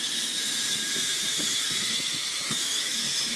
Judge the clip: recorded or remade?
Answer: remade